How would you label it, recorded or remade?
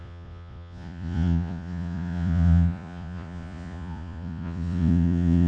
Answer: remade